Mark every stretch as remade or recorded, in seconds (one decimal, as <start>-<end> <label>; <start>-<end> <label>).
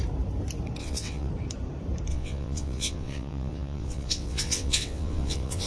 0.0-0.8 recorded; 0.8-1.3 remade; 1.3-2.1 recorded; 2.1-5.7 remade